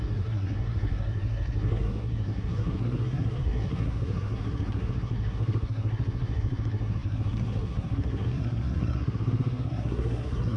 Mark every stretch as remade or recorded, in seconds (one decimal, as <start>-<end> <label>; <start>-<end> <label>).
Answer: 0.0-10.6 remade